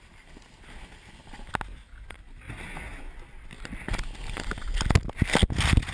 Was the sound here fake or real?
real